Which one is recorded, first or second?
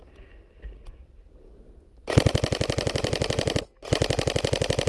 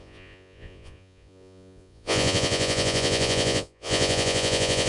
first